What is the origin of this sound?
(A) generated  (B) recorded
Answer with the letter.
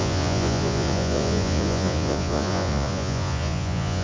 A